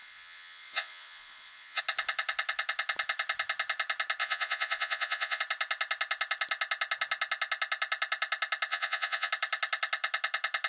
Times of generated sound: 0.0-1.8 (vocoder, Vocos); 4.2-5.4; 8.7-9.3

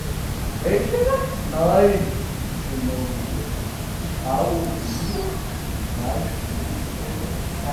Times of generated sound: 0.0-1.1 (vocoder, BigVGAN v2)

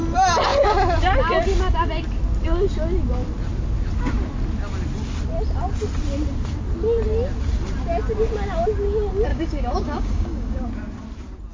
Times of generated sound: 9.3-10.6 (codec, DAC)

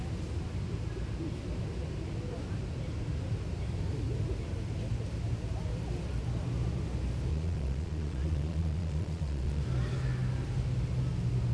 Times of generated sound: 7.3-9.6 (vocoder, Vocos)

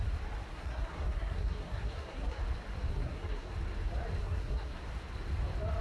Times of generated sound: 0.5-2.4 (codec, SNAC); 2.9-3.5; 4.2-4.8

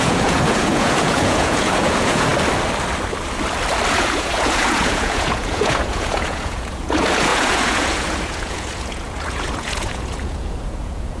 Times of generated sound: 0.0-2.3 (vocoder, Vocos); 3.9-11.2

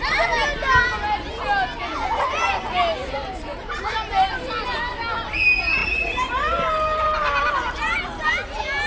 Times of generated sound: 3.0-3.8 (vocoder, BigVGAN v2); 5.8-7.5